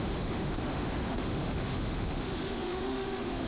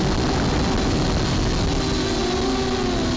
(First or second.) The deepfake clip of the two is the first